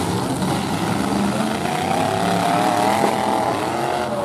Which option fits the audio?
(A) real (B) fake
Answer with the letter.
A